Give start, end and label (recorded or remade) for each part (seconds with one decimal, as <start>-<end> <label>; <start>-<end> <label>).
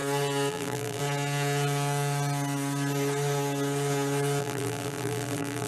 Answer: 0.0-0.5 recorded; 0.5-1.0 remade; 1.0-4.4 recorded; 4.4-5.7 remade